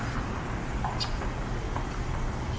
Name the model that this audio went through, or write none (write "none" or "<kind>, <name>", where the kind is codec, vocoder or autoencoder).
none